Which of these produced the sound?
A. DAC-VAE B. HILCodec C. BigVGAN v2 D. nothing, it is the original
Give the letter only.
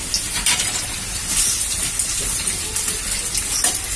D